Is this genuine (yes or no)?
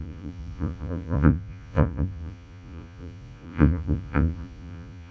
no